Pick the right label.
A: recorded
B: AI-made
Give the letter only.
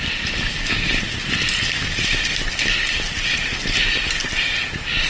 A